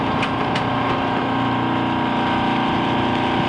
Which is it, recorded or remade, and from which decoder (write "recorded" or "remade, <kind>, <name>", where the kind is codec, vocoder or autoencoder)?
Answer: recorded